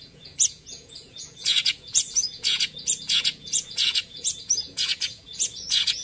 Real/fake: fake